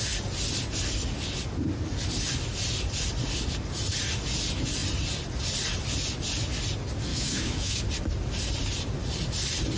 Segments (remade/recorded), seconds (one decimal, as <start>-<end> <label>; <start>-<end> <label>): 0.0-7.1 recorded; 7.1-7.8 remade; 7.8-9.8 recorded